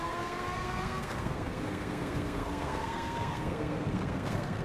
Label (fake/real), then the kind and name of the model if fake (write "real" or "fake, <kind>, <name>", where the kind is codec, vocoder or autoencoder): fake, codec, SNAC